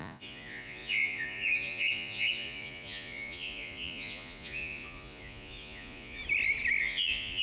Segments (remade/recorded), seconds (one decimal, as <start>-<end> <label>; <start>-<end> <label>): 0.0-6.2 remade; 6.2-6.8 recorded; 6.8-7.4 remade